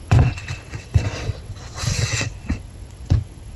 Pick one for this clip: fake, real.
fake